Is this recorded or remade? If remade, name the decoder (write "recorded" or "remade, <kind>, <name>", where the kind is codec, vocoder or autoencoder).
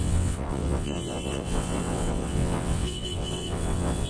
remade, vocoder, WaveNeXt